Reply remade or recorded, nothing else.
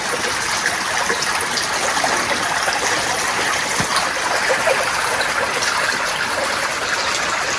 recorded